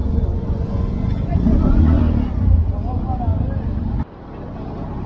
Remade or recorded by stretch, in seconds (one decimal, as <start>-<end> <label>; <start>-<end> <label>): 0.0-2.0 remade; 2.0-5.1 recorded